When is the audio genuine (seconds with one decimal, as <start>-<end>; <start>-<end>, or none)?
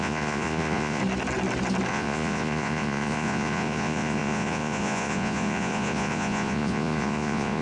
1.0-1.9